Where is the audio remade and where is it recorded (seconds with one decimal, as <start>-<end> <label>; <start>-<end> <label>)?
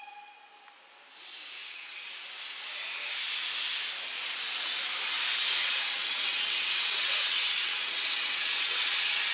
0.0-1.6 recorded; 1.6-2.1 remade; 2.1-5.6 recorded; 5.6-9.3 remade